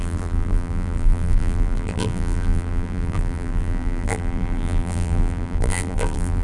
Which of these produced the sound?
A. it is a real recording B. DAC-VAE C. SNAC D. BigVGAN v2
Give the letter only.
D